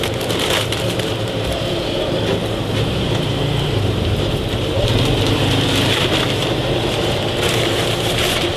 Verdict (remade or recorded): remade